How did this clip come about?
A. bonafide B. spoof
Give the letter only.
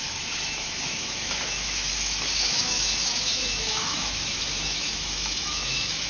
B